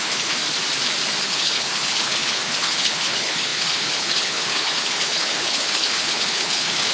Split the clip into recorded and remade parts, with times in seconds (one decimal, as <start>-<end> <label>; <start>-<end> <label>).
0.0-0.4 remade; 0.4-1.2 recorded; 1.2-6.9 remade